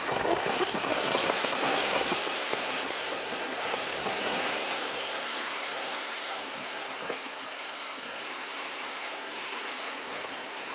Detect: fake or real fake